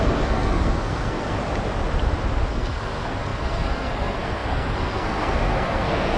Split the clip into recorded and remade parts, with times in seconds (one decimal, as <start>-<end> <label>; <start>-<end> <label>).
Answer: 0.0-1.4 remade; 1.4-2.5 recorded; 2.5-6.2 remade